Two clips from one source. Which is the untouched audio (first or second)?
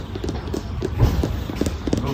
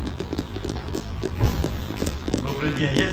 first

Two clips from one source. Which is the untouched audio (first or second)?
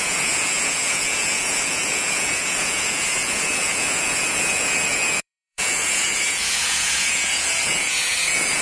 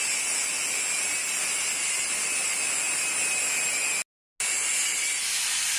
second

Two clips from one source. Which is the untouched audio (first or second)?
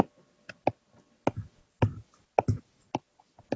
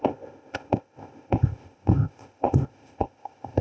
first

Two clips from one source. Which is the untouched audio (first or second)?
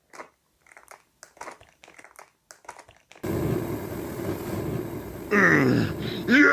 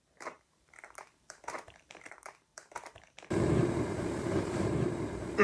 first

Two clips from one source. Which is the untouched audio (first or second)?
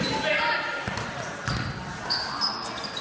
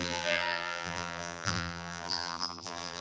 first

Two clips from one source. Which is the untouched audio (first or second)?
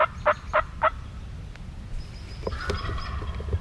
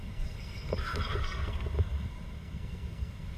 first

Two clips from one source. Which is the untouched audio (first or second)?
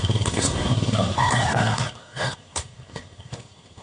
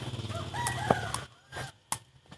second